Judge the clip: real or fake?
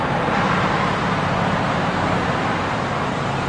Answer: fake